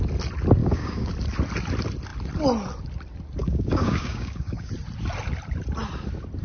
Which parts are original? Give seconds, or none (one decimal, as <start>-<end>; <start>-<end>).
0.0-0.6; 1.1-3.4; 4.7-6.4